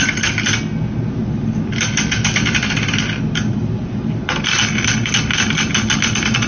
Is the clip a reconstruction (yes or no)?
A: no